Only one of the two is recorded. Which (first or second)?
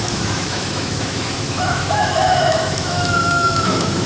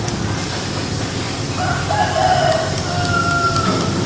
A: second